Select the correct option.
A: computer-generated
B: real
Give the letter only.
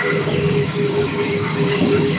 A